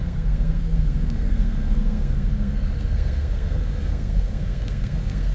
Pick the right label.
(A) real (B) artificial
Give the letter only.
B